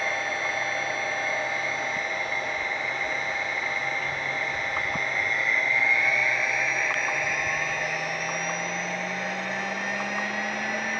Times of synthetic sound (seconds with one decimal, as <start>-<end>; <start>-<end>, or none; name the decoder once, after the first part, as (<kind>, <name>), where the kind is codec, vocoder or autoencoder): none